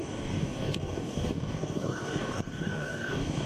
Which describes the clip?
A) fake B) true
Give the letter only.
A